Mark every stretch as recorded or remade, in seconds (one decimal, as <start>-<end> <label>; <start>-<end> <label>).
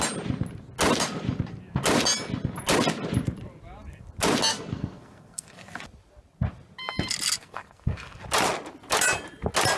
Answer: 0.0-4.5 recorded; 4.5-5.7 remade; 5.7-7.4 recorded; 7.4-8.2 remade; 8.2-9.8 recorded